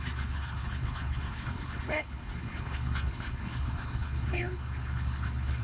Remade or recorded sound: remade